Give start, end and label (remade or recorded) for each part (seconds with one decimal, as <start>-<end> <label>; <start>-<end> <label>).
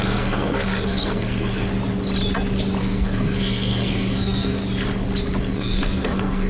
0.0-1.7 remade; 1.7-2.8 recorded; 2.8-4.6 remade; 4.6-5.4 recorded; 5.4-6.5 remade